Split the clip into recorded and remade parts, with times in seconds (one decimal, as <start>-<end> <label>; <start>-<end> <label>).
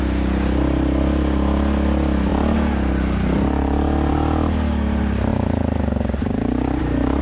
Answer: 0.0-7.2 recorded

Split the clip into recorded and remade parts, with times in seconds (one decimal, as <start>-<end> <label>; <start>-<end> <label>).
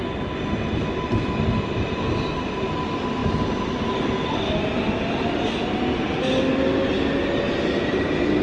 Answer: 0.0-8.4 recorded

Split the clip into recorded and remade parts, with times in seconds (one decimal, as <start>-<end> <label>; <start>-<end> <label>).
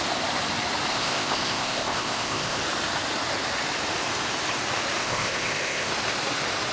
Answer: 0.0-0.9 recorded; 0.9-2.6 remade; 2.6-5.0 recorded; 5.0-5.9 remade; 5.9-6.7 recorded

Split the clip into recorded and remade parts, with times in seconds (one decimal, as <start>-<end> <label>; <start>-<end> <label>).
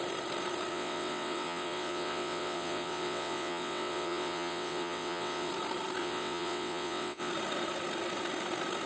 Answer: 0.0-0.7 recorded; 0.7-5.5 remade; 5.5-6.0 recorded; 6.0-7.3 remade; 7.3-8.9 recorded